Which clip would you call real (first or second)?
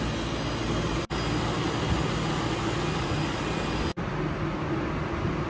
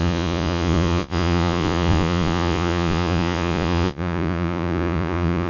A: first